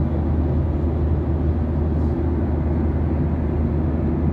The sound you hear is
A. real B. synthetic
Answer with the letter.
A